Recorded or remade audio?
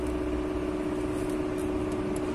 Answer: recorded